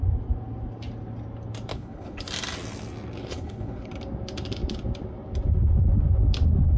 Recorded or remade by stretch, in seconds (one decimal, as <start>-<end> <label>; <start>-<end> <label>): 0.0-1.7 recorded; 1.7-2.2 remade; 2.2-3.2 recorded; 3.2-3.9 remade; 3.9-6.8 recorded